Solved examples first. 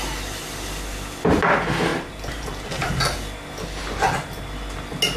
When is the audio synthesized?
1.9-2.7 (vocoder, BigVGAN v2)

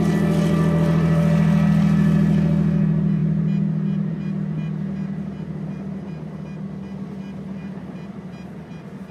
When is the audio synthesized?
none

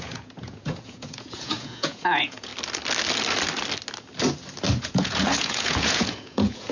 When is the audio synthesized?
0.0-2.5 (vocoder, Vocos); 4.8-6.7